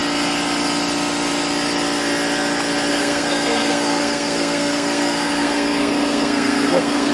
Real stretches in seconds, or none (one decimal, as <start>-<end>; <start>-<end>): 0.0-2.9